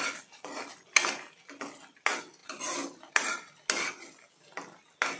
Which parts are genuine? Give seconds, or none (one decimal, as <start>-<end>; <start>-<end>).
0.0-5.2